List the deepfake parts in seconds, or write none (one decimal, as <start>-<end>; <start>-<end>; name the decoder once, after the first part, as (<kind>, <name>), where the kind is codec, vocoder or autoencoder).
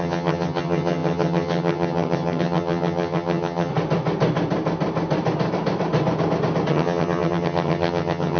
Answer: 0.0-3.7 (vocoder, HiFi-GAN); 6.7-8.4